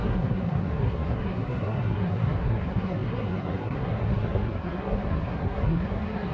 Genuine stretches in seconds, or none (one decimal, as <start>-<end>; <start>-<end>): none

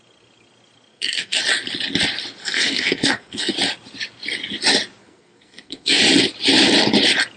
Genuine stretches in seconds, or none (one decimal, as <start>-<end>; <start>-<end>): 0.0-0.9; 1.4-2.4; 3.5-5.0; 6.0-7.4

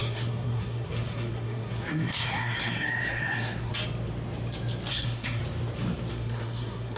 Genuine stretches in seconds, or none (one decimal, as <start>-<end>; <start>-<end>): 3.7-4.9; 5.4-6.1

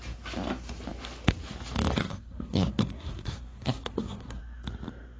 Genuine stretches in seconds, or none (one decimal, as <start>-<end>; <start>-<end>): 0.0-2.0; 4.4-5.2

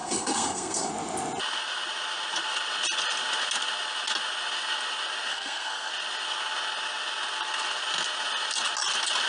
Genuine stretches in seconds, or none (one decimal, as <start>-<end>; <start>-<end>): 0.9-5.3; 5.9-9.3